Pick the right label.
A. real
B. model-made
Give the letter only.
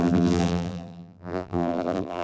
B